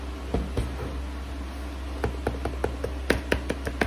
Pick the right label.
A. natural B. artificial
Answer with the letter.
A